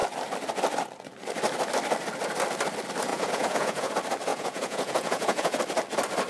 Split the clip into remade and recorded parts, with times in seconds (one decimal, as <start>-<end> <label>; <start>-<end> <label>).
0.0-3.1 recorded; 3.1-3.9 remade; 3.9-4.3 recorded; 4.3-5.6 remade; 5.6-6.3 recorded